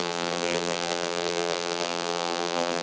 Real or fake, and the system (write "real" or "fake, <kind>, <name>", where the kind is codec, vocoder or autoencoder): fake, vocoder, BigVGAN v2